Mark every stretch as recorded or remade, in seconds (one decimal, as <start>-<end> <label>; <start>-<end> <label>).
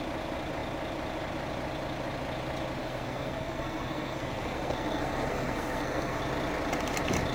0.0-2.8 recorded; 2.8-6.2 remade; 6.2-7.3 recorded